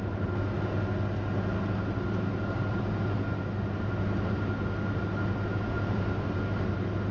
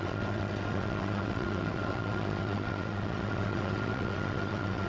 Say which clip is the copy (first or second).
second